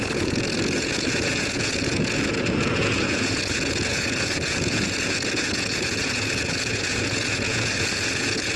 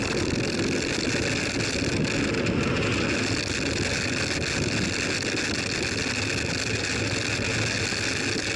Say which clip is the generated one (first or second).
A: first